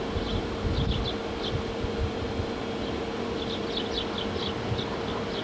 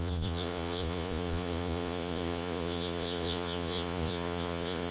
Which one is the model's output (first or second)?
second